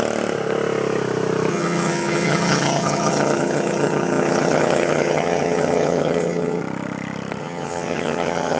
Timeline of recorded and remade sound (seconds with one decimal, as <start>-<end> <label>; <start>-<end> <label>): 0.0-1.5 recorded; 1.5-6.6 remade; 6.6-7.4 recorded; 7.4-8.6 remade